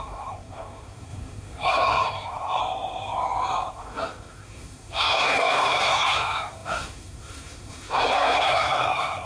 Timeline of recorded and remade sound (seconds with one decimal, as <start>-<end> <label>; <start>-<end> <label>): 0.0-2.6 remade; 2.6-3.7 recorded; 3.7-9.3 remade